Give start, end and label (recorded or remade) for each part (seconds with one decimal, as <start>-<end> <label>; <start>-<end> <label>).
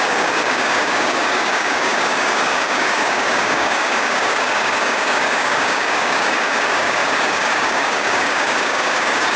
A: 0.0-9.4 remade